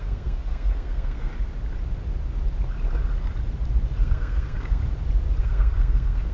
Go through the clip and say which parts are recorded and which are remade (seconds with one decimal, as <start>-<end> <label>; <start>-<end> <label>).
0.0-1.3 remade; 1.3-4.0 recorded; 4.0-4.8 remade; 4.8-5.4 recorded; 5.4-6.3 remade